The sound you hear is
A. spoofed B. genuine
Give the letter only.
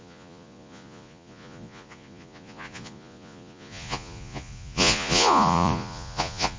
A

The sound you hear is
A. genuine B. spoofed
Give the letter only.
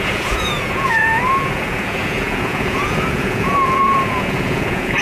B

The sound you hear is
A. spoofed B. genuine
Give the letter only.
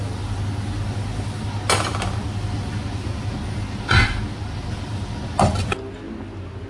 B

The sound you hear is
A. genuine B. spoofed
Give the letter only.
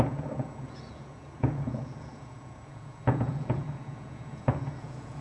B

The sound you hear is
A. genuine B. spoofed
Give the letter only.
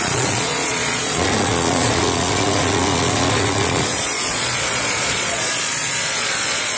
B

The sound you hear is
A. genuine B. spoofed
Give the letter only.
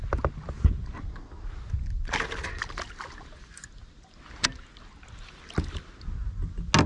A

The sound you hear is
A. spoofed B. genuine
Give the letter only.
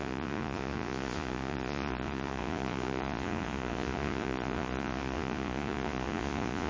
A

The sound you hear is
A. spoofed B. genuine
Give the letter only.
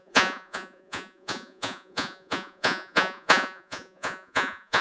A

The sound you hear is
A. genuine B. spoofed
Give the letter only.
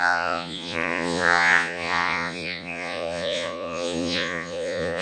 B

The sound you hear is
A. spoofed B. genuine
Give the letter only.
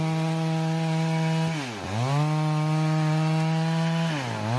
B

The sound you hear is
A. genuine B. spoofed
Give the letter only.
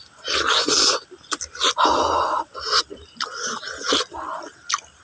A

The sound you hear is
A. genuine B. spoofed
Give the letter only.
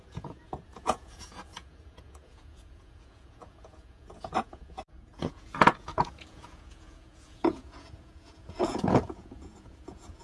B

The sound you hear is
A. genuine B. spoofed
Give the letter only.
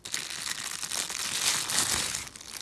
A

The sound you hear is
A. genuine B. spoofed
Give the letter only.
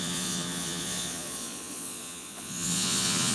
B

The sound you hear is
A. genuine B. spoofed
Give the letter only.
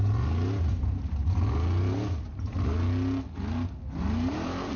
A